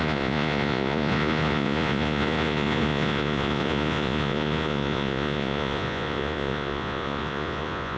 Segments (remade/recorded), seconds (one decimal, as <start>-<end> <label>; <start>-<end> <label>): 0.0-8.0 remade